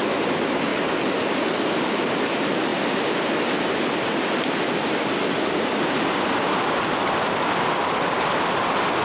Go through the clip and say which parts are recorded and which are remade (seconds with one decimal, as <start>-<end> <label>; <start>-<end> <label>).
0.0-9.0 recorded